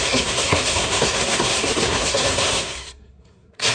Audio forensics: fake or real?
fake